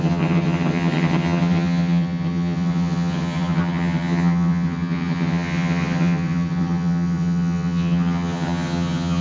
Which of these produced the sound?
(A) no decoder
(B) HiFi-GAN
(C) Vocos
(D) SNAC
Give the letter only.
B